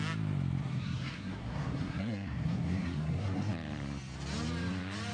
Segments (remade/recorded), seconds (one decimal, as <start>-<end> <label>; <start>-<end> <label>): 0.0-0.6 recorded; 0.6-3.5 remade; 3.5-5.1 recorded